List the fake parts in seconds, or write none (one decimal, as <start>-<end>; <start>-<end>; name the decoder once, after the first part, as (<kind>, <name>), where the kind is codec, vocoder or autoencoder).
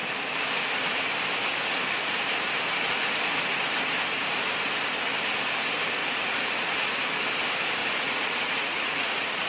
6.0-6.9 (vocoder, Vocos); 7.8-9.5